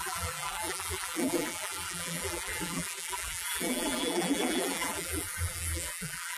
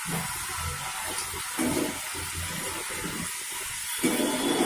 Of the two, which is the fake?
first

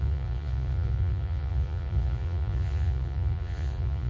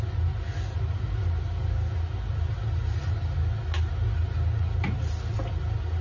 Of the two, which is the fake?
first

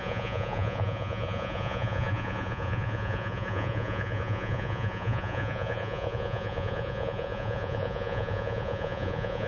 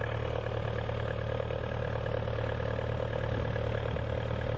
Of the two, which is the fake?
first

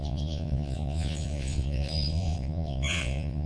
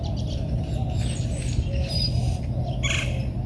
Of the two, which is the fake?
first